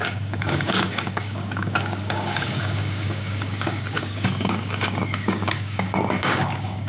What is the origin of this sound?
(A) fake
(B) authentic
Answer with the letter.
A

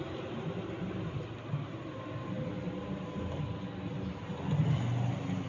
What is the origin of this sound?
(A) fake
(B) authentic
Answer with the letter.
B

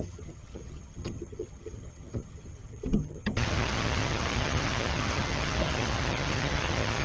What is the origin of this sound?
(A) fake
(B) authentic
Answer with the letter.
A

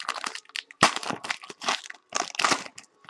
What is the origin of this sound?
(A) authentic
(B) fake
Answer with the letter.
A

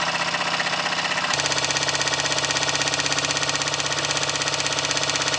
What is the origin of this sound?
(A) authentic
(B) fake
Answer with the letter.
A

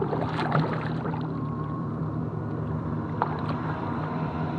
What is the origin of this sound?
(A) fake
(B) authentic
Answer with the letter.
A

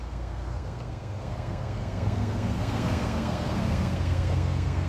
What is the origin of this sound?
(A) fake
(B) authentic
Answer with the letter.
A